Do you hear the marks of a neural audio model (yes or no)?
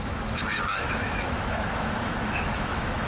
yes